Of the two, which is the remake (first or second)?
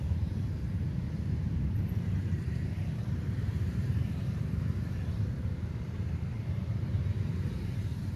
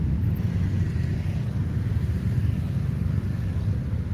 first